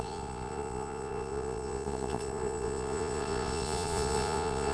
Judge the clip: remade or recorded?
remade